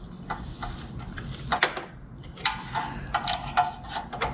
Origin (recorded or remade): recorded